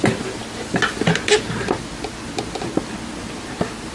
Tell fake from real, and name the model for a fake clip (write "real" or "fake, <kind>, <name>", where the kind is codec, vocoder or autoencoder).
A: real